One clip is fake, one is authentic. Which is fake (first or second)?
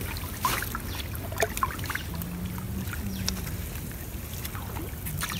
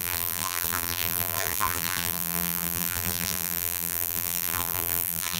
second